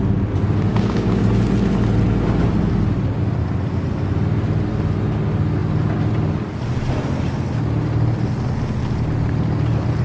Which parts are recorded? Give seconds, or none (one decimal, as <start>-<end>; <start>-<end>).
0.0-0.7; 1.2-10.0